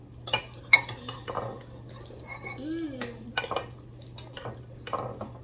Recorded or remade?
recorded